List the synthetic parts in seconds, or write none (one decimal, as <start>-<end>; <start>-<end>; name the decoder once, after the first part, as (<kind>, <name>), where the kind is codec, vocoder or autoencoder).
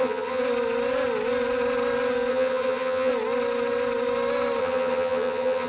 0.0-0.4 (vocoder, HiFi-GAN); 2.3-3.1; 4.6-5.7